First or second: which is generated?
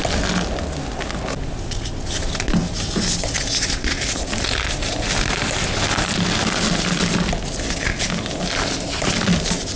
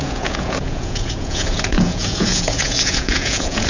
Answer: second